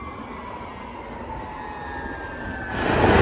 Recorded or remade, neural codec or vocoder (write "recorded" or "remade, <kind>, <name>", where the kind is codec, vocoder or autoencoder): recorded